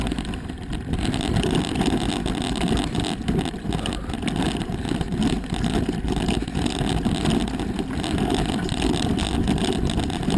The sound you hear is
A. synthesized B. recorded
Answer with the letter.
B